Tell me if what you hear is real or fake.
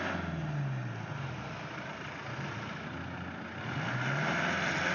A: real